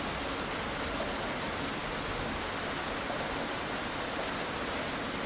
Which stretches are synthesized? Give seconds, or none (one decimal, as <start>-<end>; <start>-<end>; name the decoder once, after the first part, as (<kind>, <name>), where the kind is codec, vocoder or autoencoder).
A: none